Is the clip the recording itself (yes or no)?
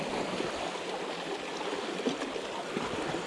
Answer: yes